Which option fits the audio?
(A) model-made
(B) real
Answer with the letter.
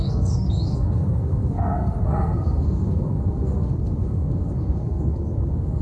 A